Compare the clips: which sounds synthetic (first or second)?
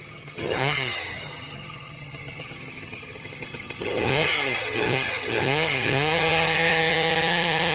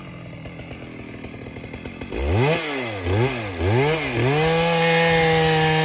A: first